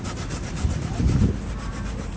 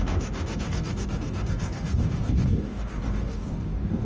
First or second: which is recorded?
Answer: first